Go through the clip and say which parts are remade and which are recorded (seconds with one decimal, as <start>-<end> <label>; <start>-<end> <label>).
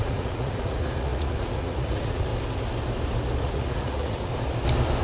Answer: 0.0-2.3 remade; 2.3-3.4 recorded; 3.4-4.3 remade; 4.3-5.0 recorded